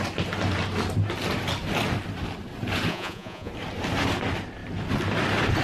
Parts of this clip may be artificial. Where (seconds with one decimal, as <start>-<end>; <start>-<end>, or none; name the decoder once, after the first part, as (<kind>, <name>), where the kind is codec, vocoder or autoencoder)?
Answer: 2.9-3.5 (vocoder, Vocos)